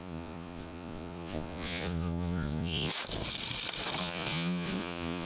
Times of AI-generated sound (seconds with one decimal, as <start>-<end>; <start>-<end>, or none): 0.0-2.9; 4.0-5.3